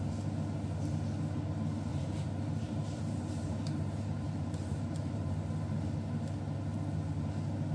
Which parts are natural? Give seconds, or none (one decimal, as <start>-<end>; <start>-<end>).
0.0-1.9; 5.3-7.7